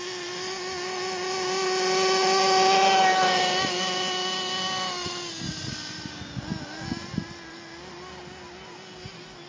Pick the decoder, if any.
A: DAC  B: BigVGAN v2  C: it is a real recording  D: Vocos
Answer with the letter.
C